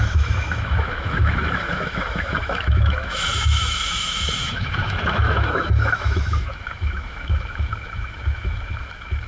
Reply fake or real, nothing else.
fake